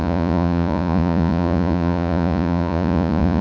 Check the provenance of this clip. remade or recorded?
remade